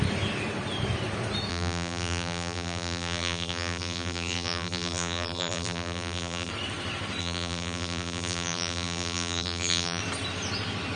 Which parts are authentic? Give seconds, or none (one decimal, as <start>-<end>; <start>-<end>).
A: 0.0-1.5; 6.5-7.2; 10.0-11.0